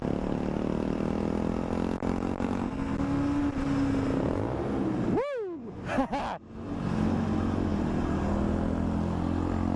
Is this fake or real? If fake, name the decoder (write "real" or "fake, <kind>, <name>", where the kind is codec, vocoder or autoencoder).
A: real